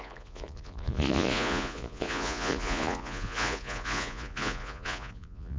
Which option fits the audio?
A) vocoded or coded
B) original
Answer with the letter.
A